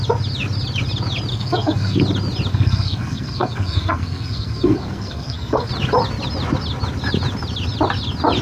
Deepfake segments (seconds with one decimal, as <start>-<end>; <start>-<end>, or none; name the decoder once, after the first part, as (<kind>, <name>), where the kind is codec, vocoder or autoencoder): 1.3-2.0 (codec, SNAC); 2.5-5.7